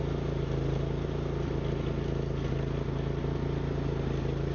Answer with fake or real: real